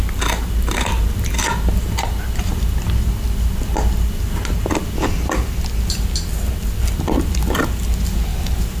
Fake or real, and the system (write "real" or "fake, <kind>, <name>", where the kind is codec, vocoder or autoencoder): real